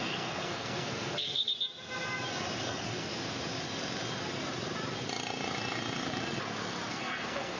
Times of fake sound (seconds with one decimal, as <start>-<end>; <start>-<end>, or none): 0.0-1.5; 2.6-3.1; 6.9-7.6